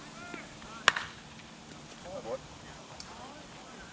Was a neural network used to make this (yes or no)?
no